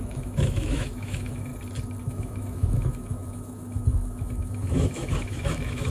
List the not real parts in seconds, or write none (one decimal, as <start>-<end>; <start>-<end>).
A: 0.0-1.5; 2.0-5.9